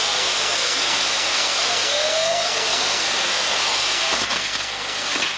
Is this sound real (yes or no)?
no